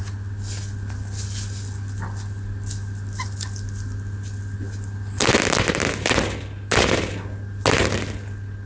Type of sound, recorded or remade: recorded